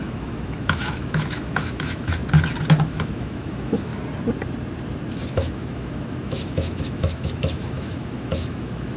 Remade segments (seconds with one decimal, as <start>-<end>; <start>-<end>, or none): 0.0-2.2; 2.8-3.9; 5.3-9.0

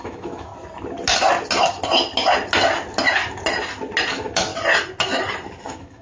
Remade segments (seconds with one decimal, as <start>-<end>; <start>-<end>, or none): 0.0-0.5; 4.1-4.5; 5.6-6.0

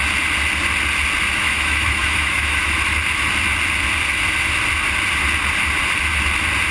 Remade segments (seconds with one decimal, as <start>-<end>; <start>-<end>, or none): 1.4-2.6

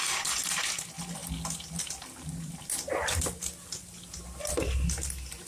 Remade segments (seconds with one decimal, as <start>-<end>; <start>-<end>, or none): none

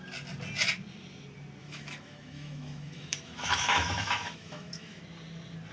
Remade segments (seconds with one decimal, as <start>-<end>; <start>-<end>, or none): 1.6-5.0

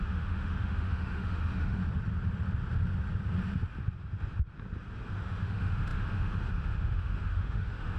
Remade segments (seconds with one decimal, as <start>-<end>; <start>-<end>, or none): 0.0-1.8; 5.2-8.0

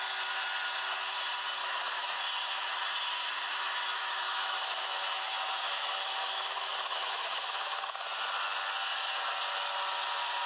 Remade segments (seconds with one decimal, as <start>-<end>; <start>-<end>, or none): 1.6-2.2; 3.5-7.8